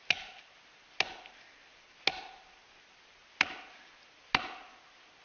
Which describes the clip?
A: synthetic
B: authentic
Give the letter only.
B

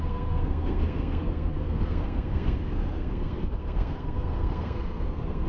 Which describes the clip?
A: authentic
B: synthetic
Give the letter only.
B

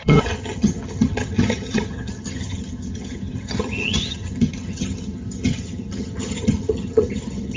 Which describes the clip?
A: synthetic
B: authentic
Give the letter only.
A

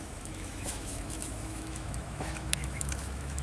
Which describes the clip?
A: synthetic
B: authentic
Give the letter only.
A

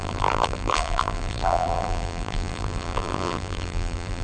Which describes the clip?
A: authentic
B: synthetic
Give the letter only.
B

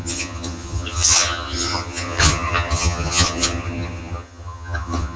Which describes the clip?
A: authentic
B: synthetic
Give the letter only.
B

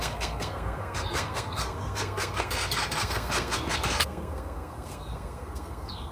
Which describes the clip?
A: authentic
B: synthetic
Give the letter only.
B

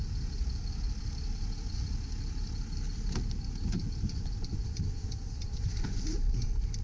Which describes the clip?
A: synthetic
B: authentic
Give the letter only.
B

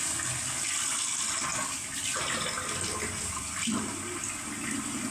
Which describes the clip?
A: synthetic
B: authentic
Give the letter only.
B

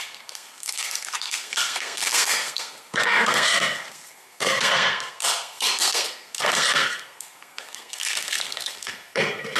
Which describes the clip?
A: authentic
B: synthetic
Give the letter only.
B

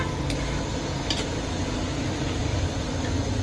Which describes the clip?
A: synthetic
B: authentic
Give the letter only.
B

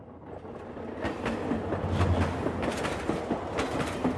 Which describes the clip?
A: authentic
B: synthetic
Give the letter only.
A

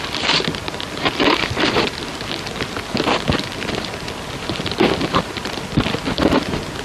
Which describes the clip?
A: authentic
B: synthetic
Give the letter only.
A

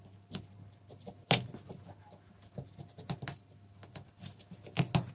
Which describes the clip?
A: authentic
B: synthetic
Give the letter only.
A